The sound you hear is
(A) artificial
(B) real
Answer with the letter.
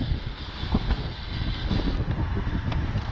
A